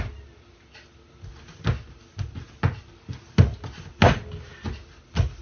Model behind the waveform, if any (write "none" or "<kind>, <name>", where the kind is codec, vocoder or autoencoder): none